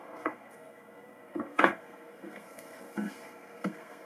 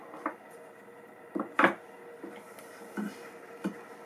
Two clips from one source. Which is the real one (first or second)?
second